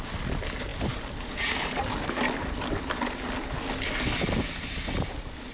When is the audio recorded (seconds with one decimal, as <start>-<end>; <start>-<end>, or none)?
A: 0.0-5.5